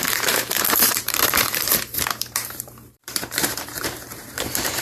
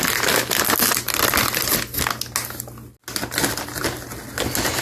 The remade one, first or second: first